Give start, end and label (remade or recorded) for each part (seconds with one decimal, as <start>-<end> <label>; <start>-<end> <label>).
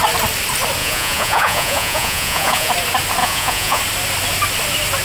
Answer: 0.0-0.8 recorded; 0.8-2.7 remade; 2.7-3.2 recorded; 3.2-3.8 remade; 3.8-5.0 recorded